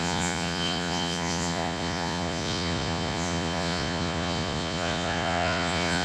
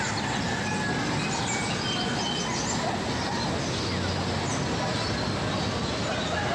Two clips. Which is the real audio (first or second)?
second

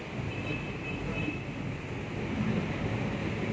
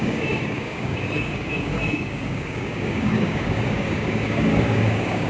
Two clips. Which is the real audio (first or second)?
first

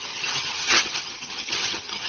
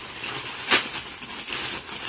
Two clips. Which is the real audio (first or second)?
second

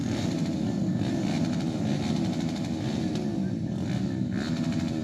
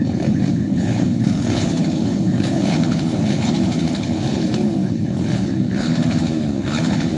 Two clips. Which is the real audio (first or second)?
first